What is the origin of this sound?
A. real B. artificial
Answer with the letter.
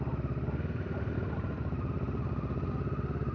A